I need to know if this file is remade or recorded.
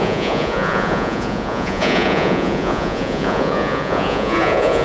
remade